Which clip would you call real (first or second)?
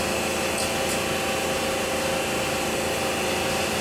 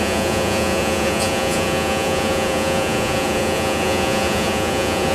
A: first